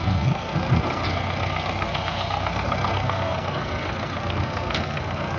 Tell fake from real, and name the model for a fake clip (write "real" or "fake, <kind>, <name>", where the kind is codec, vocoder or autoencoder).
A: fake, codec, SNAC